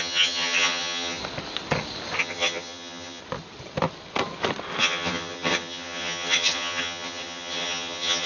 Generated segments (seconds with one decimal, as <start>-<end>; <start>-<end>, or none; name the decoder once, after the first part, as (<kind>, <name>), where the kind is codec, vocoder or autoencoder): 0.0-1.2 (vocoder, HiFi-GAN); 2.2-3.2; 4.8-8.3